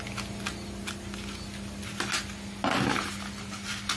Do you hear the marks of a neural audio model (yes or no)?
no